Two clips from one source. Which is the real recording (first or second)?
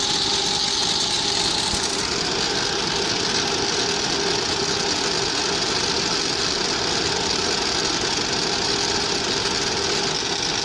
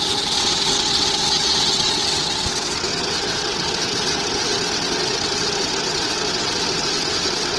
first